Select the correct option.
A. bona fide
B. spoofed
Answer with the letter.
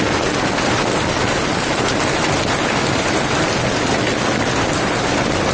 A